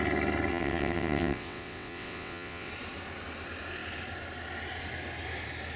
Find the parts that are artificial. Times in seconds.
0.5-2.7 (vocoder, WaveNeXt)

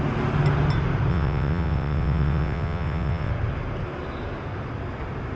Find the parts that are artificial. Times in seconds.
1.1-3.3 (vocoder, WaveNeXt)